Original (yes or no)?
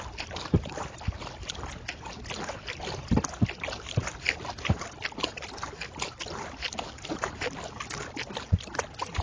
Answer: yes